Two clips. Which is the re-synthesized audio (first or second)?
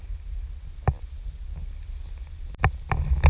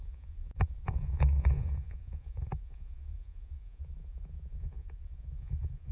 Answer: second